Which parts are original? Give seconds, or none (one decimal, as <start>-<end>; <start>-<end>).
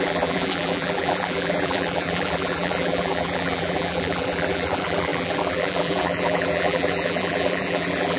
none